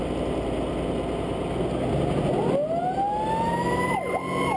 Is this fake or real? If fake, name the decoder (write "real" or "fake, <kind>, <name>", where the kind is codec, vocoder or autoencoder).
real